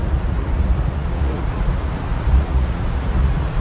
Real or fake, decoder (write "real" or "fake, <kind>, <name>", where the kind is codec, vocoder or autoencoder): fake, vocoder, Vocos